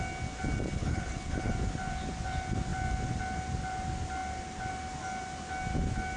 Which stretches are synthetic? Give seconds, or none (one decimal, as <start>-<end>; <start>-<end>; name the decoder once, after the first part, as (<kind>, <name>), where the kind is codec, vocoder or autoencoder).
0.8-1.5 (codec, HILCodec)